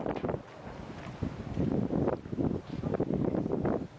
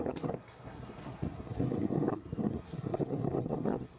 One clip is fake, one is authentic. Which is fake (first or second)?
second